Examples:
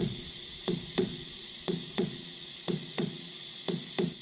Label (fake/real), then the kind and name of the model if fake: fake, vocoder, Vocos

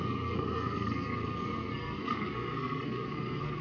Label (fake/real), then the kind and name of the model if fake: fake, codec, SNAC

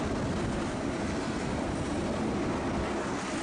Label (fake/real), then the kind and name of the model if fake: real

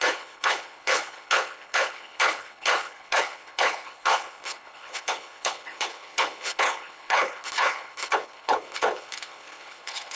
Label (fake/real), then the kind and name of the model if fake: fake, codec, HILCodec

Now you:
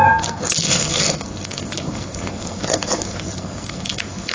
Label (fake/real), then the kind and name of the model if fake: fake, codec, SNAC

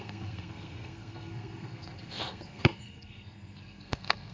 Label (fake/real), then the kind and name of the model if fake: fake, codec, SNAC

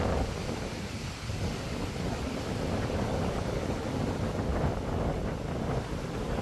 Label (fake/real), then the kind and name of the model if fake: real